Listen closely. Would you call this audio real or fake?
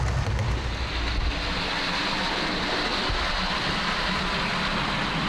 real